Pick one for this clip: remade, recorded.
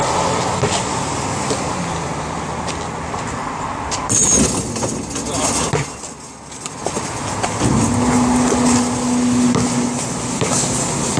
recorded